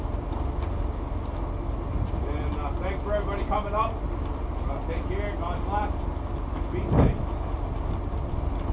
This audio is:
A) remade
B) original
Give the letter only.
B